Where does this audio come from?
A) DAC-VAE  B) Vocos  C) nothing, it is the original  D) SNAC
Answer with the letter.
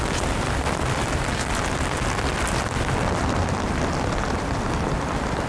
C